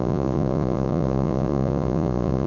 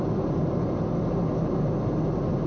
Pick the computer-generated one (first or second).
first